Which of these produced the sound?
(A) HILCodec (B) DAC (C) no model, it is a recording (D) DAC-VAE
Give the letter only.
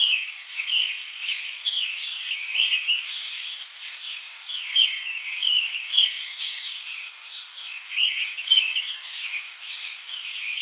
B